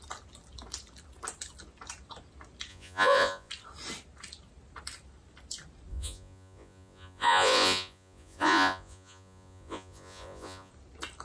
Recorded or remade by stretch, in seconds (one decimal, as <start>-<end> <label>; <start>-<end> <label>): 0.0-2.7 recorded; 2.7-3.5 remade; 3.5-5.9 recorded; 5.9-10.7 remade; 10.7-11.2 recorded